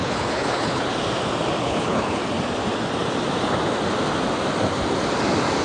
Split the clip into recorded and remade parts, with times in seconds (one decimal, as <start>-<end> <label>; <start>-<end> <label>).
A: 0.0-0.9 remade; 0.9-1.6 recorded; 1.6-2.2 remade; 2.2-5.6 recorded